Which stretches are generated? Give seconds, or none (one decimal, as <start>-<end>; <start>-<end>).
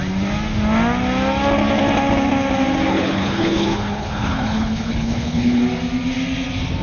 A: 2.9-5.6